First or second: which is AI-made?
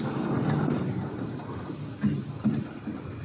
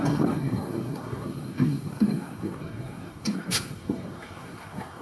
second